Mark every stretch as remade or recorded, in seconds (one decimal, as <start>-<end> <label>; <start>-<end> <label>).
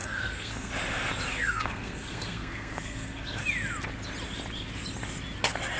0.0-0.7 remade; 0.7-1.3 recorded; 1.3-3.4 remade; 3.4-5.8 recorded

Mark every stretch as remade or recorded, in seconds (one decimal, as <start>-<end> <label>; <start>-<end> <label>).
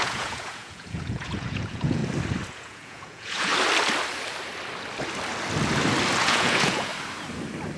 0.0-2.0 remade; 2.0-2.5 recorded; 2.5-3.5 remade; 3.5-6.2 recorded; 6.2-6.9 remade; 6.9-7.8 recorded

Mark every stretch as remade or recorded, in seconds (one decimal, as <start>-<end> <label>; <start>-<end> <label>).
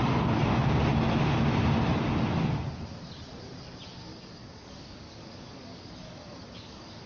0.0-4.1 recorded; 4.1-7.1 remade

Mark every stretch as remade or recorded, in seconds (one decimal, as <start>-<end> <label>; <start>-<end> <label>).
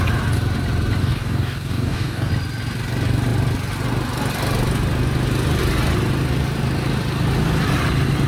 0.0-1.0 recorded; 1.0-2.3 remade; 2.3-8.3 recorded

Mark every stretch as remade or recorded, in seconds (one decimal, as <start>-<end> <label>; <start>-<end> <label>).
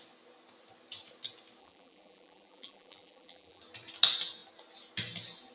0.0-1.6 recorded; 1.6-3.6 remade; 3.6-5.5 recorded